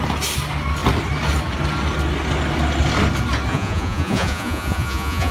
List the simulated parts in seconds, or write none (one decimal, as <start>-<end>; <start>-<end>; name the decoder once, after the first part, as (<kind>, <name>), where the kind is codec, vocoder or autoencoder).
3.5-5.3 (vocoder, Vocos)

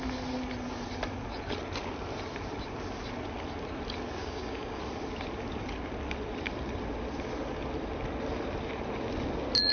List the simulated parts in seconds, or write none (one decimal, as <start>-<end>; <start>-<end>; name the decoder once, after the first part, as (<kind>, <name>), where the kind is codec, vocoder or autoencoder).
4.2-4.8 (codec, DAC)

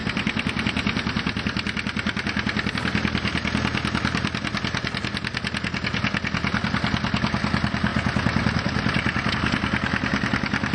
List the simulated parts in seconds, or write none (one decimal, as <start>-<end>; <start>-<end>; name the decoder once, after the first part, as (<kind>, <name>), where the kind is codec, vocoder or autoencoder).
none

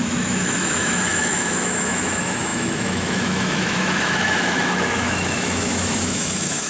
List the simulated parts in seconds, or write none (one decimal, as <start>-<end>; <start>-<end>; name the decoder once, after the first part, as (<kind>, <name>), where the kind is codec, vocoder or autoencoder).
0.0-6.7 (autoencoder, DAC-VAE)

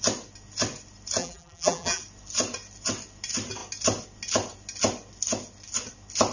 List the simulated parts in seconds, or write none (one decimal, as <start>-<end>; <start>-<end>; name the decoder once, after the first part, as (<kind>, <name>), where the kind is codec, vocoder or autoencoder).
1.2-2.0 (vocoder, BigVGAN v2)

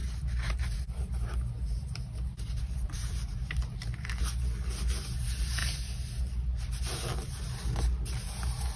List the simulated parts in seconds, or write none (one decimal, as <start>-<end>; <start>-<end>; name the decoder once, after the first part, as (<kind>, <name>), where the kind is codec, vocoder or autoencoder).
0.0-4.2 (vocoder, BigVGAN v2)

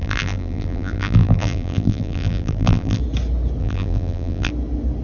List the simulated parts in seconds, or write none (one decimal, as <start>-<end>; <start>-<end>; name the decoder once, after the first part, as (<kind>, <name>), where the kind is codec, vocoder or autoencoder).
0.0-3.0 (vocoder, BigVGAN v2); 3.6-4.5